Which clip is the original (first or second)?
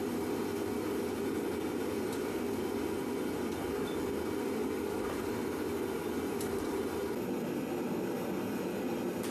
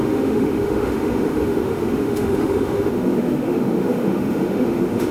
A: first